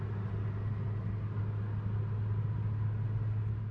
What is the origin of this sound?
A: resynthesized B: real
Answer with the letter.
B